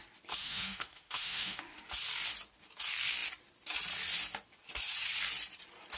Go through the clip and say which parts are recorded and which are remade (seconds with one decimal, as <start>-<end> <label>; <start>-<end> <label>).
0.0-0.4 recorded; 0.4-1.9 remade; 1.9-6.0 recorded